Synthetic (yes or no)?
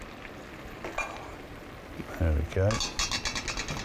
no